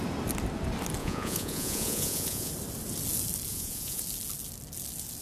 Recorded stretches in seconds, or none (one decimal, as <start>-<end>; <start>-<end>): 0.0-1.0; 2.5-3.5; 4.0-5.2